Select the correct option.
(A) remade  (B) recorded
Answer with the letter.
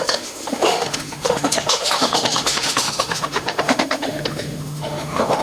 A